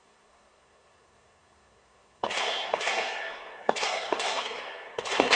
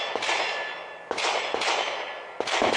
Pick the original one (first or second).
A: second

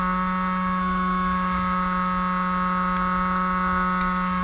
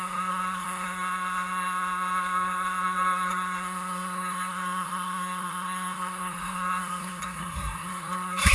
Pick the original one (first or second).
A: first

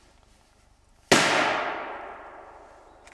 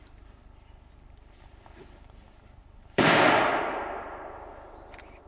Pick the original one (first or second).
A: first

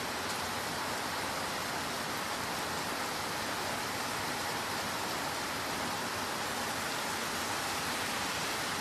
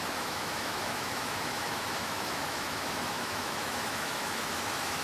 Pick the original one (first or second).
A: first